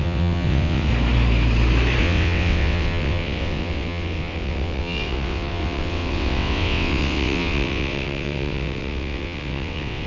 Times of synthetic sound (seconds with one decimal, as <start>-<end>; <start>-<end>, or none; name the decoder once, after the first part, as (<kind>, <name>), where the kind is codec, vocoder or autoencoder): 0.0-0.9 (vocoder, WaveNeXt); 2.0-10.1